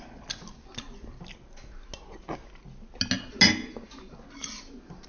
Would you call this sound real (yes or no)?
yes